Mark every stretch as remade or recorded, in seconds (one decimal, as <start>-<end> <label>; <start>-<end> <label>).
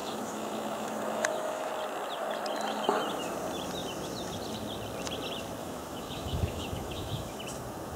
0.0-1.7 remade; 1.7-5.6 recorded; 5.6-7.4 remade; 7.4-8.0 recorded